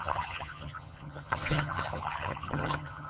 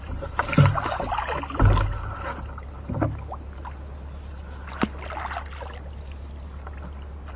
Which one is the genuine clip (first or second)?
second